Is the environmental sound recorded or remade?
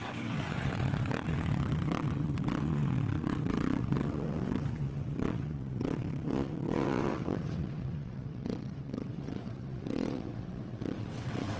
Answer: remade